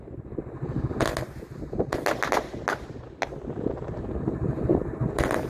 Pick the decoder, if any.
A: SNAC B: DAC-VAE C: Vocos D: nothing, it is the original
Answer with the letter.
D